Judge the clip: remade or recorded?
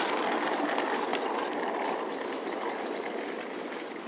remade